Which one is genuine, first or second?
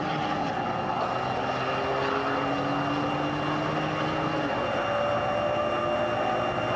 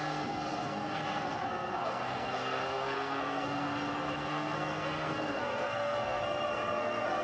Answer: first